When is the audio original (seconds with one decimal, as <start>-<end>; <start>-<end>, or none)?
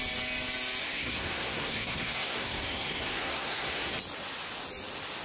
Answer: 0.0-0.8; 3.9-5.2